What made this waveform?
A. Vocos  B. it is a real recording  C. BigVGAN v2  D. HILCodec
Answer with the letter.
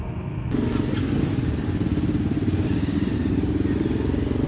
B